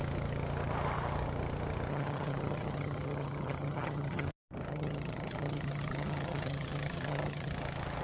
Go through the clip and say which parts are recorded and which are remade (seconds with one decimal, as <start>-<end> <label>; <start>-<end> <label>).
0.0-1.9 recorded; 1.9-4.3 remade; 4.3-4.7 recorded; 4.7-7.5 remade; 7.5-8.0 recorded